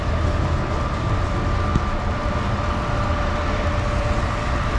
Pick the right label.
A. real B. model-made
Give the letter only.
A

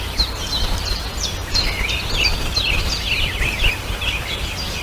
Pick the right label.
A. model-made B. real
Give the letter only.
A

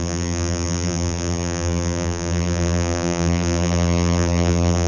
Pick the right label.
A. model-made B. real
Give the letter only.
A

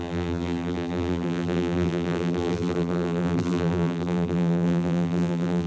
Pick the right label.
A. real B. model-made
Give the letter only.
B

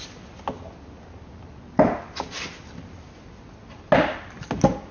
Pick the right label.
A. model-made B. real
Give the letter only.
B